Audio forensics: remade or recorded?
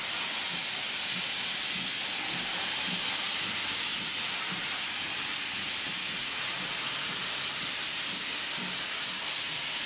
recorded